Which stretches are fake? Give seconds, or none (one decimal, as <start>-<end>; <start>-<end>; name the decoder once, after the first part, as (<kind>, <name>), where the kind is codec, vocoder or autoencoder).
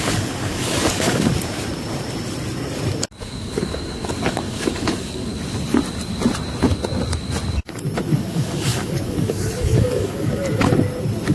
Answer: 0.0-1.3 (codec, DAC); 3.2-5.3; 8.2-10.4